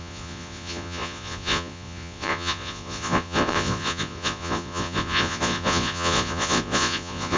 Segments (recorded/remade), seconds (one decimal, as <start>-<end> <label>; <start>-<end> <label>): 0.0-7.4 remade